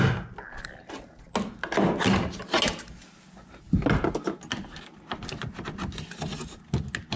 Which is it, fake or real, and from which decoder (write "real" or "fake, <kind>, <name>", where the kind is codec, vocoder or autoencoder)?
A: real